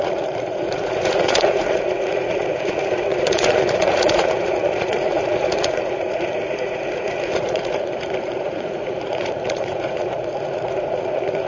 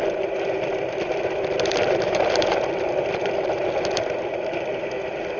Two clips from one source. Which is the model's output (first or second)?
first